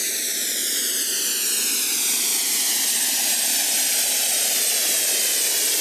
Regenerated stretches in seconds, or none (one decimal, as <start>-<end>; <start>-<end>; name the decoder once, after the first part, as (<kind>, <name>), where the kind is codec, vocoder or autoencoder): 0.0-0.9 (vocoder, BigVGAN v2)